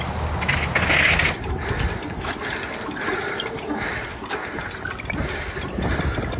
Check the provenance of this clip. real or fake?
real